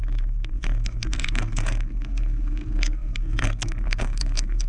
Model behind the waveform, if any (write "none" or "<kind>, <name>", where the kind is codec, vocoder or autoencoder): codec, SNAC